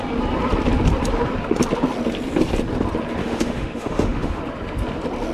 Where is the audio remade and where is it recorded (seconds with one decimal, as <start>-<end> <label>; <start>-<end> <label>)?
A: 0.0-3.2 recorded; 3.2-4.4 remade; 4.4-5.3 recorded